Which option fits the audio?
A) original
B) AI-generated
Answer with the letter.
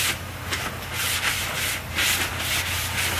A